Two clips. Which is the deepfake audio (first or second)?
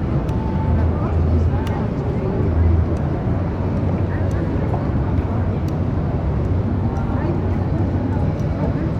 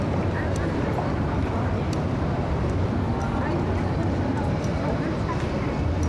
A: second